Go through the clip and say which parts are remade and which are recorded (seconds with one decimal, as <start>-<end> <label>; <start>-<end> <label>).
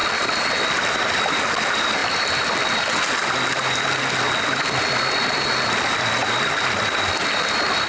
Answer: 0.0-0.9 remade; 0.9-2.0 recorded; 2.0-4.0 remade; 4.0-6.2 recorded; 6.2-7.2 remade; 7.2-7.9 recorded